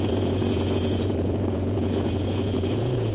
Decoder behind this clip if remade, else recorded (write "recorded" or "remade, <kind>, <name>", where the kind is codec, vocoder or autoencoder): remade, vocoder, Vocos